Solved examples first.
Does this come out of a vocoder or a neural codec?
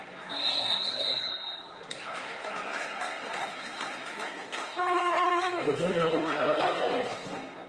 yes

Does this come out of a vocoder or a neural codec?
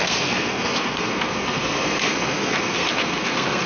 yes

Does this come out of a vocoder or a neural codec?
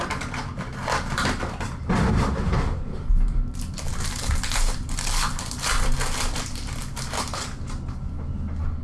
no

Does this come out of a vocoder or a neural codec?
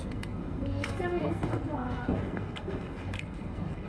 yes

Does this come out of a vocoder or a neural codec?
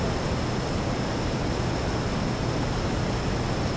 no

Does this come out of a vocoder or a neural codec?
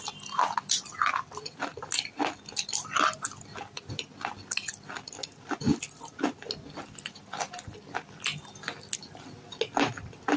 no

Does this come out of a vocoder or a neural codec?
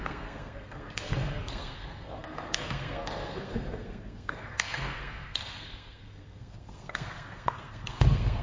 yes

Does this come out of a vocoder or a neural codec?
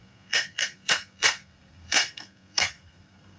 yes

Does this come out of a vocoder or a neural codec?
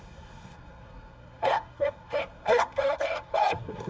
yes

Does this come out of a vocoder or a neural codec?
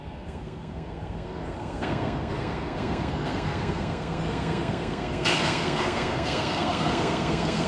yes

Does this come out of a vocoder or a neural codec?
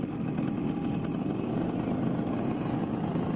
no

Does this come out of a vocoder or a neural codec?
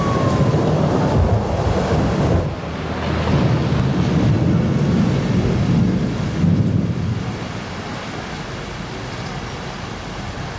no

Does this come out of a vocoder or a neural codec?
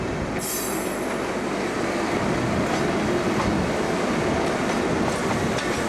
no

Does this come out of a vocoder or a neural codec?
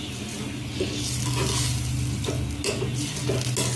no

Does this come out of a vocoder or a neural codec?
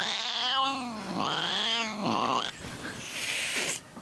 no